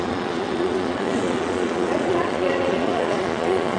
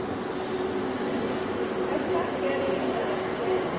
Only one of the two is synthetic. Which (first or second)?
first